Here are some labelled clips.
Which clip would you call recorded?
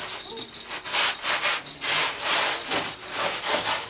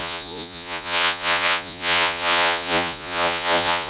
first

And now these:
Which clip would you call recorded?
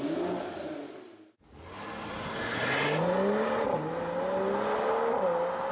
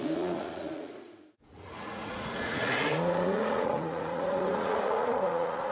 first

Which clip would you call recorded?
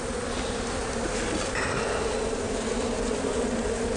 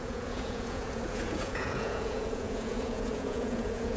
first